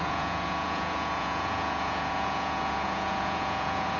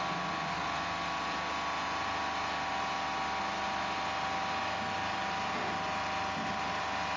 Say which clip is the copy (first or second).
first